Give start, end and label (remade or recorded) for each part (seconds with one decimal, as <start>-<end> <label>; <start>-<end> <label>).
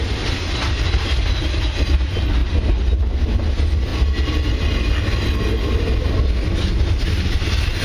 0.0-7.8 recorded